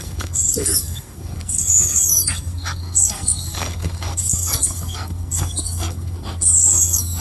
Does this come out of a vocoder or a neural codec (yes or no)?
yes